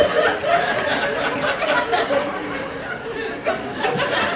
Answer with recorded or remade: recorded